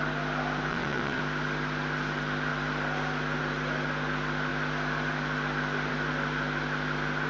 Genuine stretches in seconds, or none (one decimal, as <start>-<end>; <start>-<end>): 0.0-0.7; 1.2-7.3